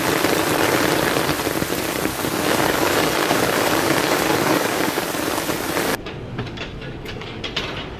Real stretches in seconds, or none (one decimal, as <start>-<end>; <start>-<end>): 0.0-2.1; 5.0-5.9; 7.4-8.0